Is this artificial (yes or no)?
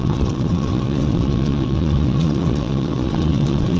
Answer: yes